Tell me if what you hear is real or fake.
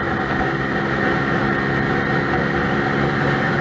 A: real